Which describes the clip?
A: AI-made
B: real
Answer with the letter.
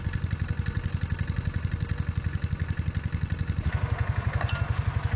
B